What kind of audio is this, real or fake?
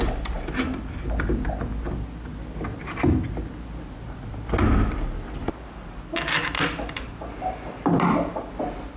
real